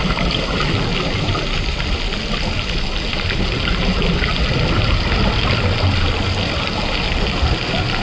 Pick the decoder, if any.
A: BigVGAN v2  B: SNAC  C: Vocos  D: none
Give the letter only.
D